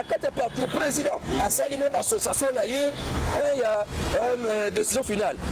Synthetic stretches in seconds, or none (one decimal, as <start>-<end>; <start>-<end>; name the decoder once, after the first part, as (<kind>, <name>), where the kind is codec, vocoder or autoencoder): 0.6-3.4 (codec, DAC); 4.2-4.9